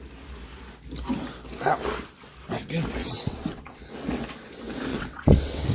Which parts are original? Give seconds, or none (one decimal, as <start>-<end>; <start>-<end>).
0.0-3.0; 3.8-4.9